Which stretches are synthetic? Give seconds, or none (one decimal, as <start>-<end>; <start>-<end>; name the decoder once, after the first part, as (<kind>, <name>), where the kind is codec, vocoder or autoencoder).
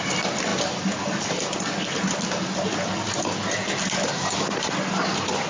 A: none